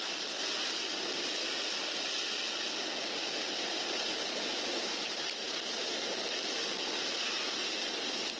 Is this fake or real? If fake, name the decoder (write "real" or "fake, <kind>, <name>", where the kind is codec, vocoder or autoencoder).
real